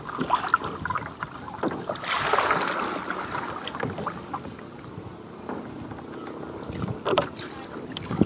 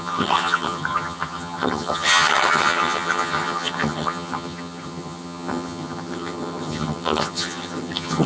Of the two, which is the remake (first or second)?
second